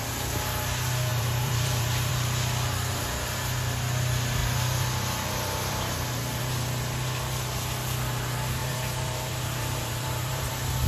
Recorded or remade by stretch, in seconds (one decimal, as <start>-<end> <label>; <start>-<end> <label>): 0.0-1.1 recorded; 1.1-2.1 remade; 2.1-4.4 recorded; 4.4-6.4 remade; 6.4-8.6 recorded; 8.6-10.5 remade; 10.5-10.9 recorded